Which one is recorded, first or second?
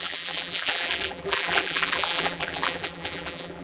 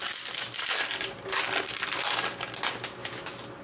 second